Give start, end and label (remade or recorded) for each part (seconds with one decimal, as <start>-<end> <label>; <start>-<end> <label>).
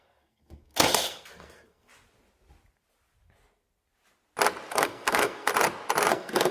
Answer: 0.0-1.9 remade; 1.9-4.7 recorded; 4.7-5.5 remade; 5.5-6.1 recorded; 6.1-6.5 remade